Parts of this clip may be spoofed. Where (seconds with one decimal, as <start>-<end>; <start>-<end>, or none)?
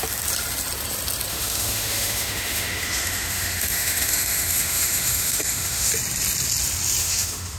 1.3-5.9; 7.0-7.6